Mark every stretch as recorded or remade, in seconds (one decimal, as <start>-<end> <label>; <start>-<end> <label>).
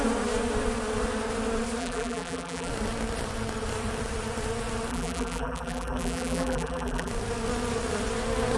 0.0-1.8 recorded; 1.8-2.7 remade; 2.7-4.9 recorded; 4.9-7.1 remade; 7.1-8.6 recorded